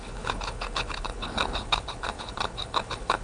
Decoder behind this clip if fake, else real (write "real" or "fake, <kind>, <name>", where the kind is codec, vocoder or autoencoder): fake, codec, HILCodec